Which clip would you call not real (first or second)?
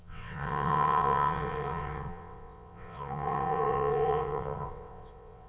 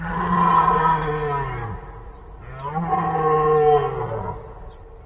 first